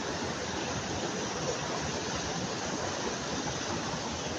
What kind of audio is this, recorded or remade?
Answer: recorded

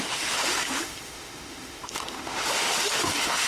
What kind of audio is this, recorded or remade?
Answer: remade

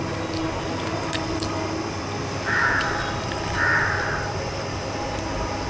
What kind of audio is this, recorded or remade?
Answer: recorded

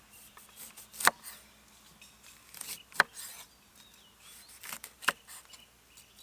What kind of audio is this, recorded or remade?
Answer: recorded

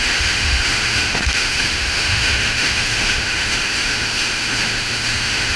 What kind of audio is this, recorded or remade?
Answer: remade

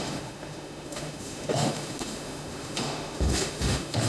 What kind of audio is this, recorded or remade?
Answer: remade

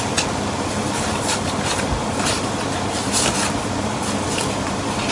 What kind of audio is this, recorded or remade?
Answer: recorded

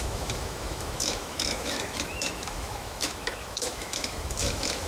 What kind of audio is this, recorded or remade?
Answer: remade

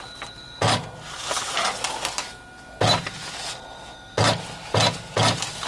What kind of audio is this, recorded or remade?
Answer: recorded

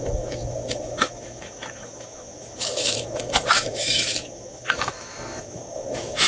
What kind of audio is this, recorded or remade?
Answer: remade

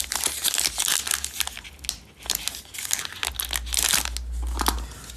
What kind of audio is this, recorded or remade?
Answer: recorded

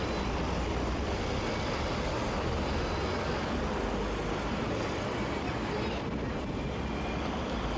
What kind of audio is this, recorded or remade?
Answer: recorded